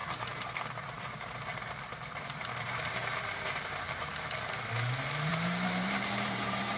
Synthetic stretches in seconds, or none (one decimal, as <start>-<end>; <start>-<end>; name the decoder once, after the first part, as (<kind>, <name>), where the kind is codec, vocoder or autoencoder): 0.0-4.1 (vocoder, BigVGAN v2); 5.3-6.8